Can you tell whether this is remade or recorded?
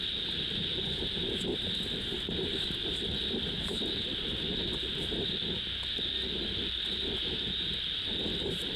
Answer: recorded